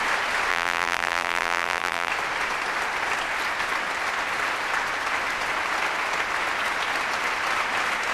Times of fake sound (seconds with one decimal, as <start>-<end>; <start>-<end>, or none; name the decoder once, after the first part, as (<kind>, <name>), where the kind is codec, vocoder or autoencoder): 0.5-2.1 (vocoder, BigVGAN v2)